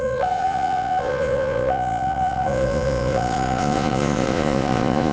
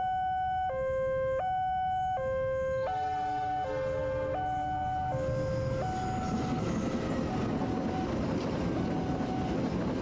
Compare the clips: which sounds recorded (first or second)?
second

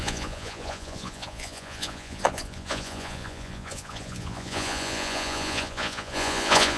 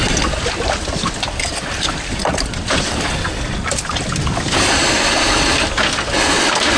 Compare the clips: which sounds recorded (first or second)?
second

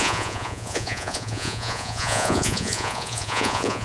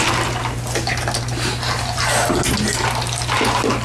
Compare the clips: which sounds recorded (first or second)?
second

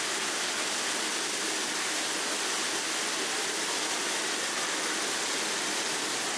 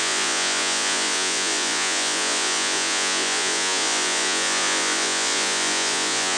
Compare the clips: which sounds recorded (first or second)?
first